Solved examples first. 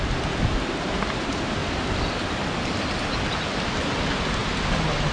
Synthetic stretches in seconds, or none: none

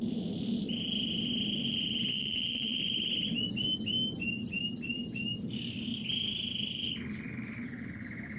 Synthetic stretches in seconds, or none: 2.1-2.8 (vocoder, WaveNeXt)

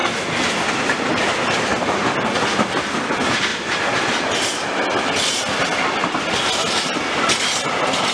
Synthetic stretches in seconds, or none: none

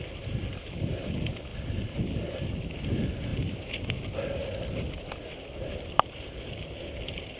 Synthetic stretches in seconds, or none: none